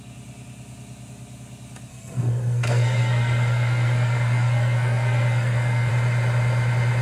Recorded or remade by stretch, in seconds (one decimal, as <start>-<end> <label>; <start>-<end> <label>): 0.0-1.9 recorded; 1.9-5.9 remade; 5.9-7.0 recorded